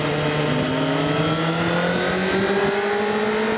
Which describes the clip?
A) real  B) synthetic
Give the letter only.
A